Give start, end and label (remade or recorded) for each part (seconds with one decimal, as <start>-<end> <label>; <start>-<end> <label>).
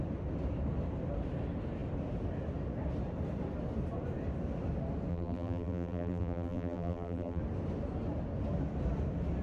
0.0-5.1 recorded; 5.1-7.4 remade; 7.4-9.4 recorded